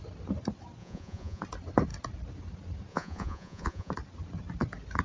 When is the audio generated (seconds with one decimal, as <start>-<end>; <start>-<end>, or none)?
0.8-1.4; 2.9-3.9